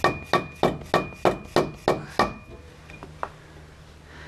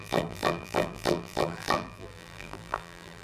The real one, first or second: first